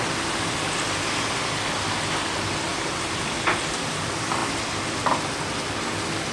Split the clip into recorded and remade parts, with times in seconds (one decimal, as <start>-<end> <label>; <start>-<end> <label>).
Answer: 0.0-2.7 recorded; 2.7-3.3 remade; 3.3-6.3 recorded